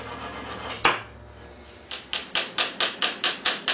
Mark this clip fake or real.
real